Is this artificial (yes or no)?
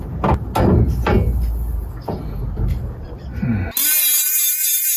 no